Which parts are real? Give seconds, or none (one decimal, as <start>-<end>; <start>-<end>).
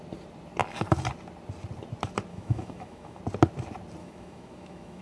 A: 0.0-2.3; 3.2-4.0